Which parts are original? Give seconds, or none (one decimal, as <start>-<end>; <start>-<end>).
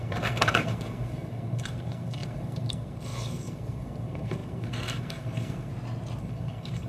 5.7-6.2